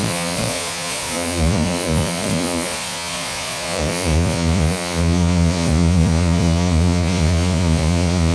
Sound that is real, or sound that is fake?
fake